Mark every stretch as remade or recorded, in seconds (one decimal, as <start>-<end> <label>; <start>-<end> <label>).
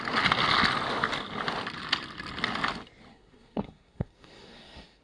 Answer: 0.0-3.1 recorded; 3.1-5.0 remade